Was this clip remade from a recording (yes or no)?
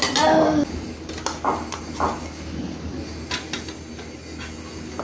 no